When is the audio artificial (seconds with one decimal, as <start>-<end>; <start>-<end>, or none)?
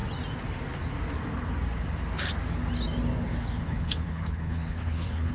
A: 3.2-5.3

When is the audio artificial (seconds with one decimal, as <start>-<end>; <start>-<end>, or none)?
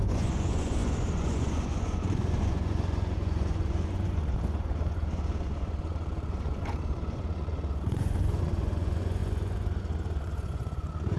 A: 0.0-11.2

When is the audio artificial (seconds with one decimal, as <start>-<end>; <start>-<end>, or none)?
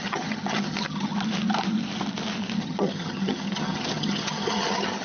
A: 0.0-1.1; 2.6-5.0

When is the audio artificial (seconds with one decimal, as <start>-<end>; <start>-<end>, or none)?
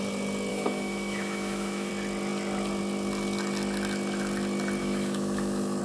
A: 0.5-1.9; 4.8-5.8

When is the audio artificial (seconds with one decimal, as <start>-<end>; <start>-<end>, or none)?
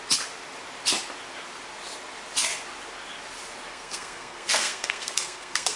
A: 3.7-5.8